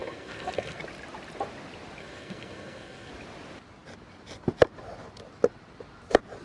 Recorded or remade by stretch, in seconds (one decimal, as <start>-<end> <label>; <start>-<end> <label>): 0.0-0.8 remade; 0.8-2.0 recorded; 2.0-3.1 remade; 3.1-6.4 recorded